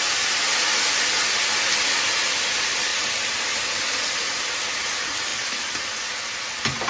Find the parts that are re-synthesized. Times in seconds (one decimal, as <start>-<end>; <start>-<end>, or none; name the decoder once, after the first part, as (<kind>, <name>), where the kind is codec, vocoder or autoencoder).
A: 2.9-3.4 (vocoder, BigVGAN v2)